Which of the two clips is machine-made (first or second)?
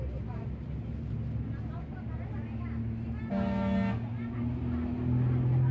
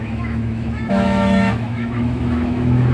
second